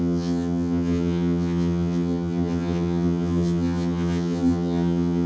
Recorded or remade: remade